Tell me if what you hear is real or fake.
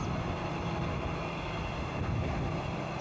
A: real